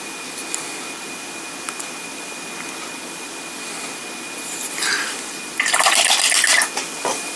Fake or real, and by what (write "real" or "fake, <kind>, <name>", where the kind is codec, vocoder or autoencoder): real